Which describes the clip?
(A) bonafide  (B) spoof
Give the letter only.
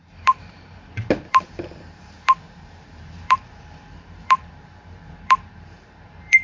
B